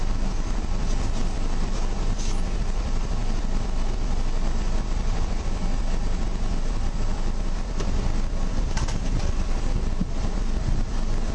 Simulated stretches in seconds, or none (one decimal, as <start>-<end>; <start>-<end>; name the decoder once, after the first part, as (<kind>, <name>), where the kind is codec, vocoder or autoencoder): 0.0-11.3 (vocoder, BigVGAN v2)

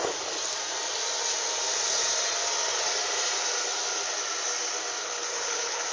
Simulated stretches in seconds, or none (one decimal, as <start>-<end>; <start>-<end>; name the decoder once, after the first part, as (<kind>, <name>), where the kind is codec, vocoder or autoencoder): 5.0-5.9 (codec, HILCodec)